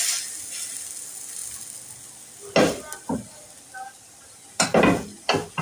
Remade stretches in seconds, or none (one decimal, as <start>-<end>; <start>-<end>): none